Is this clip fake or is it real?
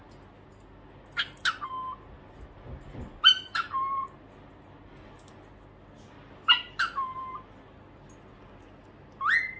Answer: real